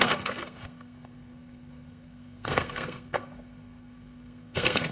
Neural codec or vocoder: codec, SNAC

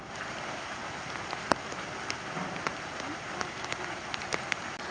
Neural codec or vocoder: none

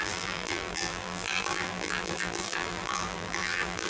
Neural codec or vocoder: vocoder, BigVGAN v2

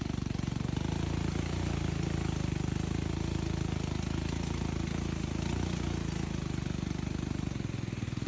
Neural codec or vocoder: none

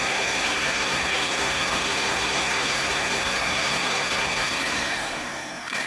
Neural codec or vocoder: codec, SNAC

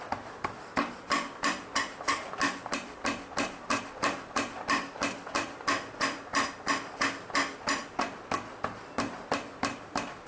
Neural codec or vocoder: none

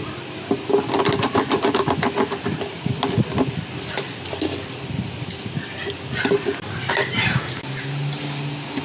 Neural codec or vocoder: none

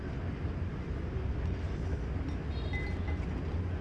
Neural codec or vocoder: none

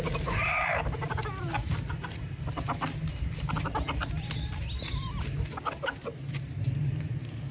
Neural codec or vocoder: none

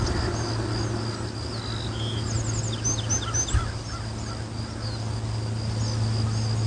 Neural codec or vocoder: none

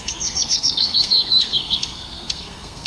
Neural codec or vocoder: codec, SNAC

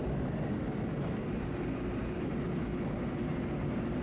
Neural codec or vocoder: none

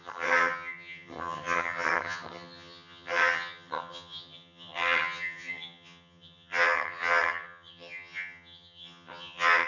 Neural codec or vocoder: vocoder, HiFi-GAN